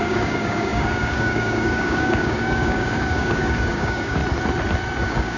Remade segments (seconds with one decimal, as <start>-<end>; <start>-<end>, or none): 0.0-4.2; 5.0-5.4